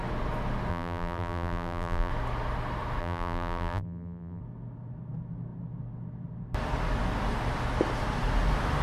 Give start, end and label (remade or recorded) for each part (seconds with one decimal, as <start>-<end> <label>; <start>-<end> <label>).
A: 0.0-0.7 recorded; 0.7-2.1 remade; 2.1-3.0 recorded; 3.0-4.4 remade; 4.4-8.8 recorded